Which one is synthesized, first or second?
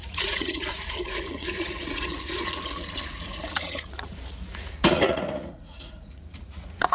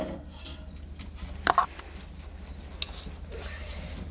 first